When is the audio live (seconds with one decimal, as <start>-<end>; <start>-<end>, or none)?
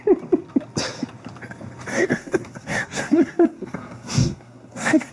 0.0-1.9